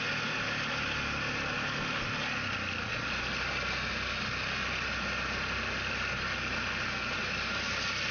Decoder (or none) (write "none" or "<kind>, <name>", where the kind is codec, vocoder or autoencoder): none